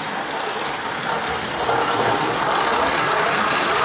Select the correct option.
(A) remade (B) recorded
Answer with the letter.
B